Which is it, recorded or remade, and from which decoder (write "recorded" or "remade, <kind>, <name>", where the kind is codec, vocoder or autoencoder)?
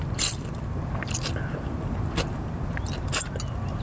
recorded